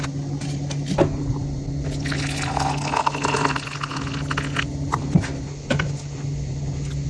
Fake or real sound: real